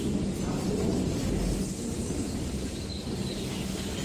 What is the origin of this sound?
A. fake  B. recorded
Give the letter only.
B